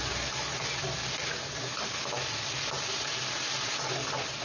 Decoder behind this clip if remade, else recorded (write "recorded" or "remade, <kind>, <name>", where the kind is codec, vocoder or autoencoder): recorded